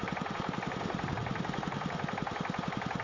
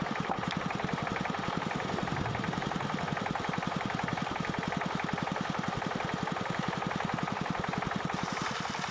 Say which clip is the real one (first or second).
first